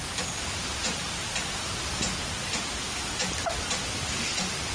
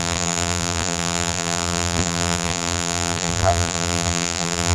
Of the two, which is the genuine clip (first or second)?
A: first